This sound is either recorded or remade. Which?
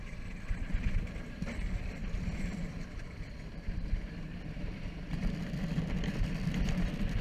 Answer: remade